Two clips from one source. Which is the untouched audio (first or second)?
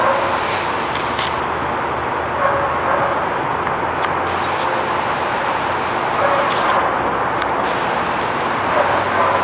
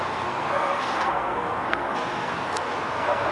first